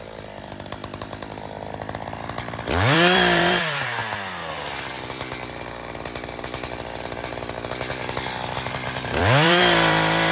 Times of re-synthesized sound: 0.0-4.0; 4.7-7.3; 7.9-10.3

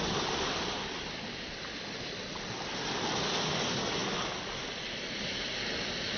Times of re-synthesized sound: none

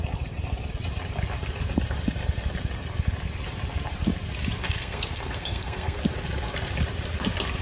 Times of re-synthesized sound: 4.6-6.0

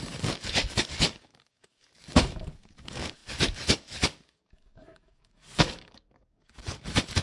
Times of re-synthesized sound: 0.0-7.2

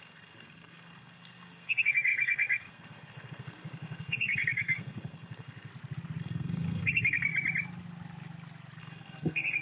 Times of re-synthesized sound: 0.0-5.7; 6.2-7.3; 8.8-9.6

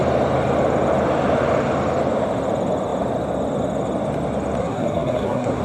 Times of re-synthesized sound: 4.6-5.6